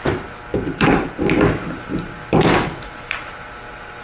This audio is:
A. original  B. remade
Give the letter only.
A